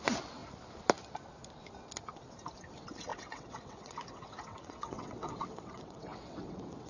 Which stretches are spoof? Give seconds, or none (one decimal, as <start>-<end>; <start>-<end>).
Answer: 3.1-6.9

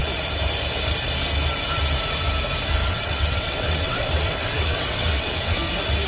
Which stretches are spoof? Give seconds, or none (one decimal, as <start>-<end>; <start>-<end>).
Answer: 2.8-5.6

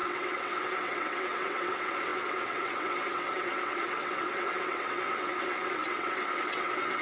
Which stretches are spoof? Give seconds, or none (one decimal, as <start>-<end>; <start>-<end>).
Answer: 0.0-7.0

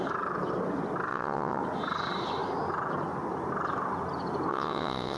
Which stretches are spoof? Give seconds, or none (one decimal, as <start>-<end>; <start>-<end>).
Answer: 1.1-1.6; 4.5-5.2

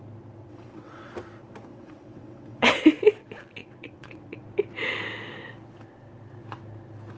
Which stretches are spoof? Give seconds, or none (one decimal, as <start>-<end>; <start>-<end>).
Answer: 0.4-1.1; 1.7-2.8; 3.6-4.4